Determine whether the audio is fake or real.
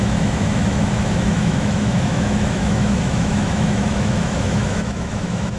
fake